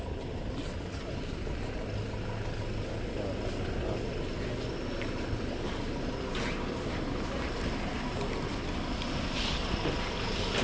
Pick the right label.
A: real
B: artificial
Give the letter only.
A